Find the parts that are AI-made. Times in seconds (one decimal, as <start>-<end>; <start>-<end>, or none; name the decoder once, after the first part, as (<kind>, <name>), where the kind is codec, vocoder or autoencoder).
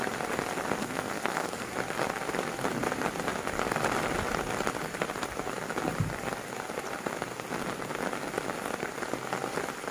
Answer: 0.8-1.7 (codec, SNAC)